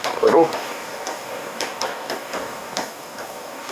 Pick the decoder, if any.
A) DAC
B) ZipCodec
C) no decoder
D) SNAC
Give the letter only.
A